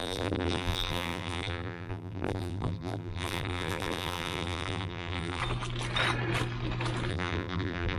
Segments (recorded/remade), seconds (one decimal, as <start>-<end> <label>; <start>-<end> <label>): 0.0-5.4 remade; 5.4-7.1 recorded; 7.1-8.0 remade